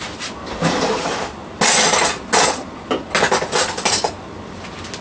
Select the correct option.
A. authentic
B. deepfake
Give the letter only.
A